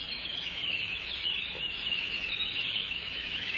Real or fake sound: fake